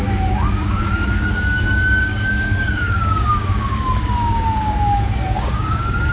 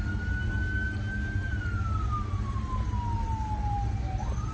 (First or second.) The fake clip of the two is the first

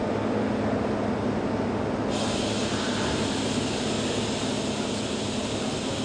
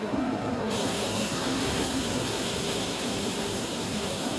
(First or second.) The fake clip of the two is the second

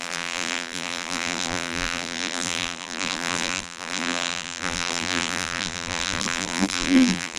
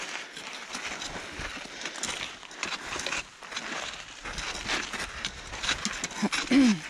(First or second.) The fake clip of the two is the first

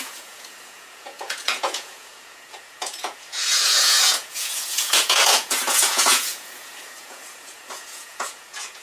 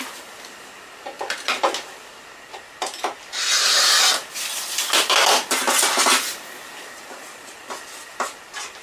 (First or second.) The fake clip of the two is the first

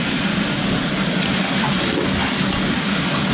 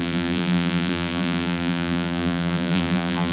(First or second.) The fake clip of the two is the second